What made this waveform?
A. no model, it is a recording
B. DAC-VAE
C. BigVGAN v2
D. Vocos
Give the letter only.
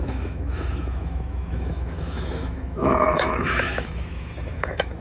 B